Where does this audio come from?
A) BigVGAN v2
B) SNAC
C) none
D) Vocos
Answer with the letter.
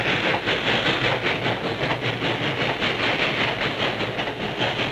C